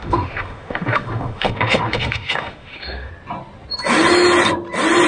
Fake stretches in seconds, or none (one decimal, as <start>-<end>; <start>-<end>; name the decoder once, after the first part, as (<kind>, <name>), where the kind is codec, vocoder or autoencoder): 0.0-3.1 (autoencoder, DAC-VAE)